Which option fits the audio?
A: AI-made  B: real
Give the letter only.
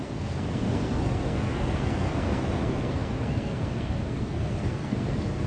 A